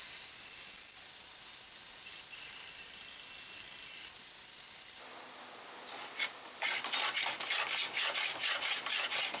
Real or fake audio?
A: real